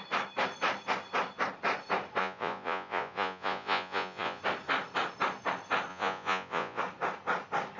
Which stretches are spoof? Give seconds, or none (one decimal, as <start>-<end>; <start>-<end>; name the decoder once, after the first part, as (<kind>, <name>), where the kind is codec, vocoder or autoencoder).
2.2-4.4 (vocoder, Vocos); 5.9-6.8